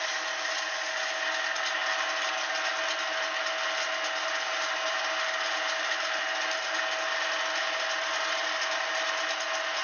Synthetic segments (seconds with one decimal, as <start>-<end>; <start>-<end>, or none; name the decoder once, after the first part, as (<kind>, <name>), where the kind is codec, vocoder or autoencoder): none